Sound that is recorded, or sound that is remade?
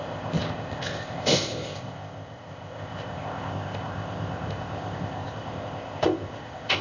remade